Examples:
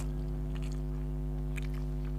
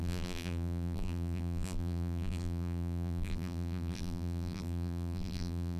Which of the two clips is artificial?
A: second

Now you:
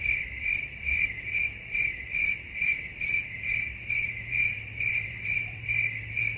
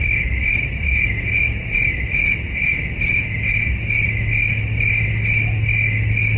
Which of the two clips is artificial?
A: first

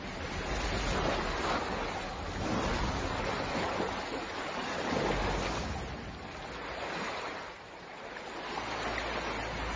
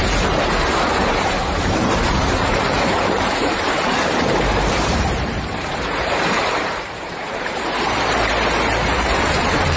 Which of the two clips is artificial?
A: second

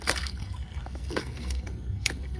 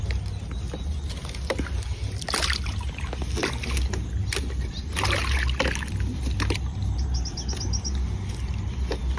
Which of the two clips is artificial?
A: first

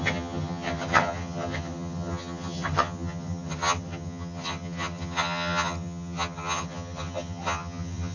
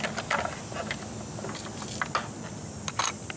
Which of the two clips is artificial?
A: first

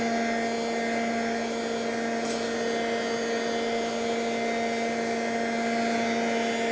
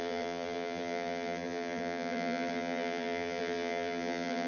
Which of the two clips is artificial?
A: second